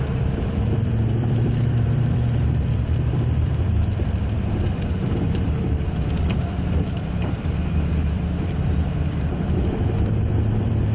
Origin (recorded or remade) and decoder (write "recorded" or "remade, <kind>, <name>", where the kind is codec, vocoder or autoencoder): remade, vocoder, BigVGAN v2